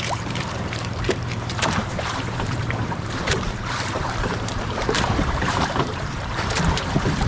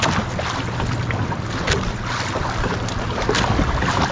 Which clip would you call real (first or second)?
second